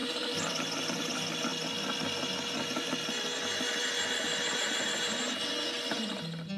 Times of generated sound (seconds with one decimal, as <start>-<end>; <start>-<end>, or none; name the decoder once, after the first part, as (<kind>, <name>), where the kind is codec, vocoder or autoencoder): none